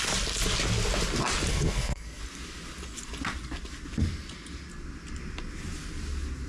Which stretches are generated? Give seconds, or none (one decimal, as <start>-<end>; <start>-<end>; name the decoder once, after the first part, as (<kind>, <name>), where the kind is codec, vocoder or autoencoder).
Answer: 1.5-2.2 (codec, SNAC)